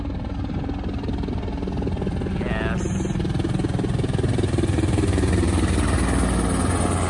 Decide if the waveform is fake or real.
real